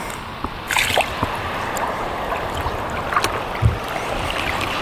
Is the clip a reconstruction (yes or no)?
no